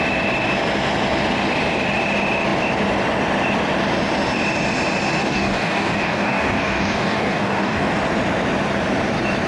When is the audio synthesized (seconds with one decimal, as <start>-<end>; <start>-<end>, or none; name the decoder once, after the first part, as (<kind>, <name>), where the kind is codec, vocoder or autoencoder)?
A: 5.2-7.9 (codec, DAC)